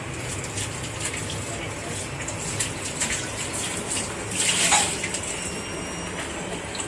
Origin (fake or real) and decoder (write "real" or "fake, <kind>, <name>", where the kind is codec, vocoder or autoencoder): real